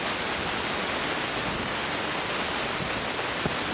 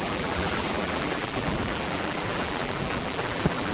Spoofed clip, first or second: second